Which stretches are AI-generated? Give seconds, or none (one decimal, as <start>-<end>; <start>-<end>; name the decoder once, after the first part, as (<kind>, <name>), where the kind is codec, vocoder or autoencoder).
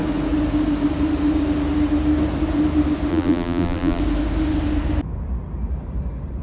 3.1-4.0 (vocoder, BigVGAN v2)